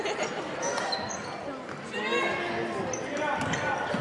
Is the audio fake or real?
real